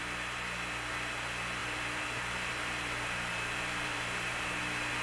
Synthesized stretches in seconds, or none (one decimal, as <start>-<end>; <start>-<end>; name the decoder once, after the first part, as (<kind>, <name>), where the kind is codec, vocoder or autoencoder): 1.6-4.6 (vocoder, BigVGAN v2)